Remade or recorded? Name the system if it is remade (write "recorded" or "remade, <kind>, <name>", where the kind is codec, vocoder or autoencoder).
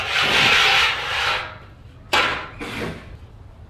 recorded